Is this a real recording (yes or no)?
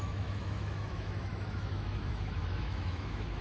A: no